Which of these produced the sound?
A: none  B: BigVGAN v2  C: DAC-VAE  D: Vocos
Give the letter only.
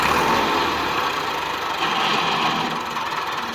A